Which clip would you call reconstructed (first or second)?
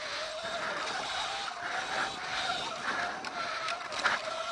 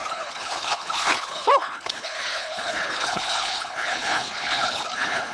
second